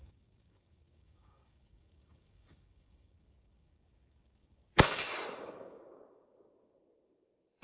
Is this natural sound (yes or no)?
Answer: no